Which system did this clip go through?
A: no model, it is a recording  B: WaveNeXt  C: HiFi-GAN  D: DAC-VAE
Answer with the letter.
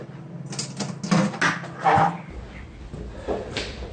A